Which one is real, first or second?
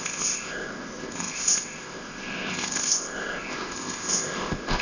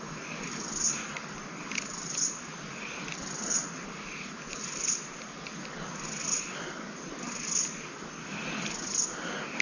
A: second